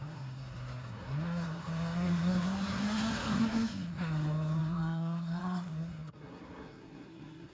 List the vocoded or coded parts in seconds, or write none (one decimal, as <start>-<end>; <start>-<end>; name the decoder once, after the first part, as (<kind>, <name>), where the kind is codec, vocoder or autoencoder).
0.0-7.5 (codec, SNAC)